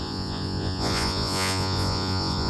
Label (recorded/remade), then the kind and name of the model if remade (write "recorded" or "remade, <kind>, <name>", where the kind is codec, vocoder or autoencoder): remade, vocoder, Vocos